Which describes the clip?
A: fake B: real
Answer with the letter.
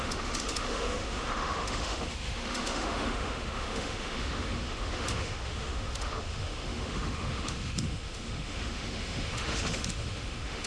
A